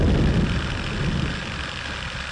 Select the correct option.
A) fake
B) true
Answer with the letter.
B